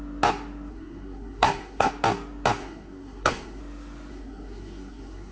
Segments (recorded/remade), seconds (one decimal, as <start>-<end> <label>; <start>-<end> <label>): 0.0-0.7 recorded; 0.7-1.9 remade; 1.9-2.6 recorded; 2.6-3.6 remade; 3.6-4.1 recorded; 4.1-5.3 remade